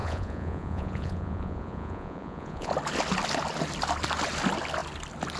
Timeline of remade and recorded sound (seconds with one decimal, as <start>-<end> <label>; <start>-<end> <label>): 0.0-2.7 remade; 2.7-5.4 recorded